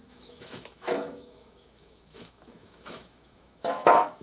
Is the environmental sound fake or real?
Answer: fake